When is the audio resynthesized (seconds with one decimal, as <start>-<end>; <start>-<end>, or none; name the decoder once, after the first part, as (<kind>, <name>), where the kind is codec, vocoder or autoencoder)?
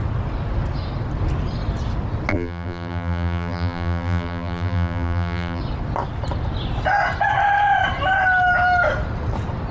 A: 2.3-5.6 (vocoder, BigVGAN v2)